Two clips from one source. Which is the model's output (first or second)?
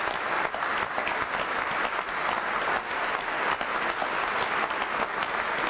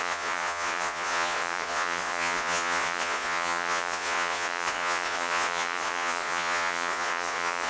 second